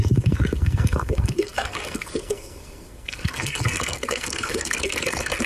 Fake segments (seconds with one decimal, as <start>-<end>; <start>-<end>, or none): 0.0-5.5